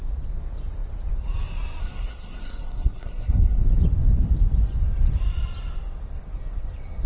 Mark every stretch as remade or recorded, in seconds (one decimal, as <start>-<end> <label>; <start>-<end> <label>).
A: 0.0-1.8 recorded; 1.8-3.6 remade; 3.6-7.1 recorded